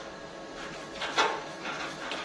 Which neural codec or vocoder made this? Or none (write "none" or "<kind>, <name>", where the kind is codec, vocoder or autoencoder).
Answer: none